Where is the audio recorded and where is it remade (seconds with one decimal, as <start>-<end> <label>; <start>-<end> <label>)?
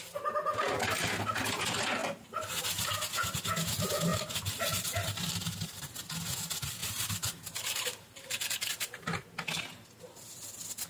0.0-4.1 recorded; 4.1-5.9 remade; 5.9-6.8 recorded; 6.8-8.7 remade; 8.7-10.9 recorded